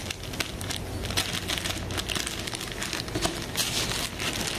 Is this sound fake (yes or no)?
no